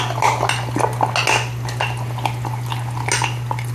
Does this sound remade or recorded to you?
recorded